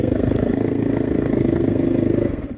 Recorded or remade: remade